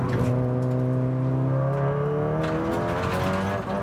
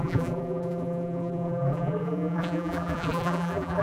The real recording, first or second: first